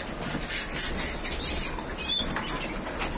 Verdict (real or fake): real